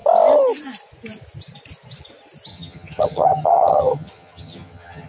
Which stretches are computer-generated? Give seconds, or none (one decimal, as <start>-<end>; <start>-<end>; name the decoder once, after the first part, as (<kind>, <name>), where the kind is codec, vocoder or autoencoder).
2.5-5.1 (vocoder, HiFi-GAN)